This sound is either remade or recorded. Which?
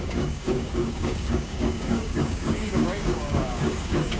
remade